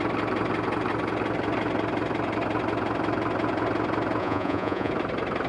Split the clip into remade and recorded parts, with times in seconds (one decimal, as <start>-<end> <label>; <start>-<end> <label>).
0.0-4.2 recorded; 4.2-4.9 remade; 4.9-5.5 recorded